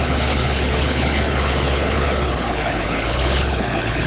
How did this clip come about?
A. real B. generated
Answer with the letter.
B